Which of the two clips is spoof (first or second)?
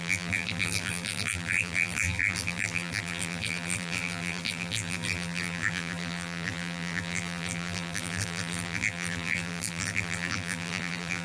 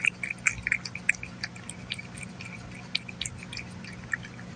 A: first